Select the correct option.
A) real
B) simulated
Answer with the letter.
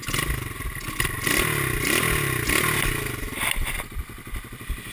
A